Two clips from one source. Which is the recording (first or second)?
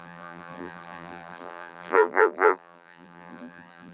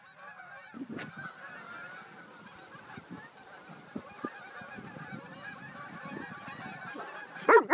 second